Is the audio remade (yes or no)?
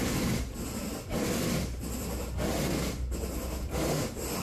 no